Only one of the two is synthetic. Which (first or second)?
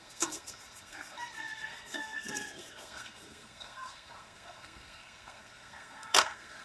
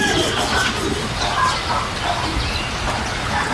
first